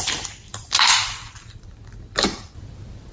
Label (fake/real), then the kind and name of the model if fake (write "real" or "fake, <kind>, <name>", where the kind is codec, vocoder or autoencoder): fake, vocoder, BigVGAN v2